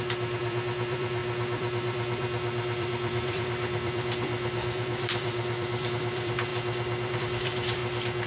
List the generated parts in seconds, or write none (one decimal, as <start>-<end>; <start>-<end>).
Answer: 0.0-7.8